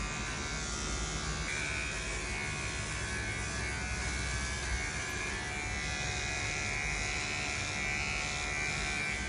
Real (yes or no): yes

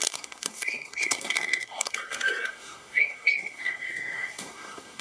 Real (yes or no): no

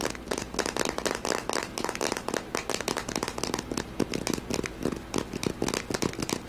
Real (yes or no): yes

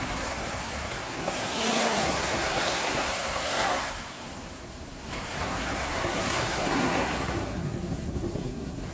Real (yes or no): no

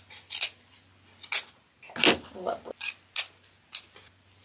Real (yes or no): yes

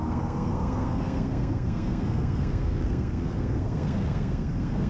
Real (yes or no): no